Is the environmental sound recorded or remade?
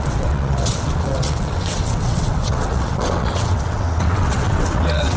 remade